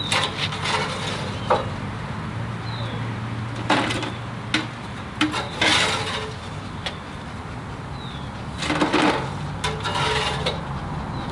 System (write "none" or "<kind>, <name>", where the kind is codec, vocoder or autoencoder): none